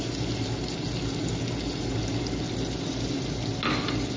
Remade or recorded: recorded